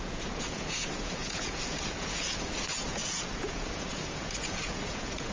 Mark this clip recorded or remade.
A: remade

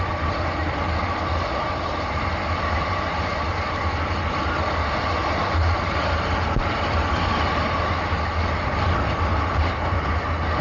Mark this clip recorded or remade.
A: recorded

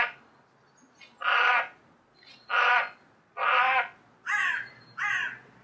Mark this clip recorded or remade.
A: recorded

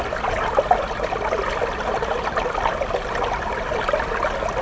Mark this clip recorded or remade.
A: recorded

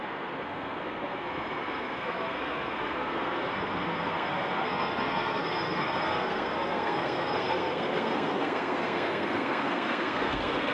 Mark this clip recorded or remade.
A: remade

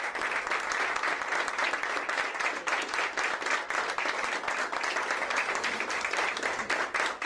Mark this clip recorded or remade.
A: recorded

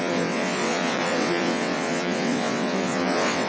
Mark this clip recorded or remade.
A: remade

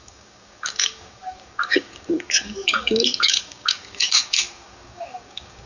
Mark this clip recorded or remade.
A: remade